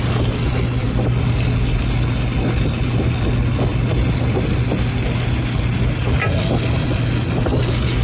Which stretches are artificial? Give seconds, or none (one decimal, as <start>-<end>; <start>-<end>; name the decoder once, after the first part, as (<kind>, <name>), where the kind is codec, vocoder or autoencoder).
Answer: none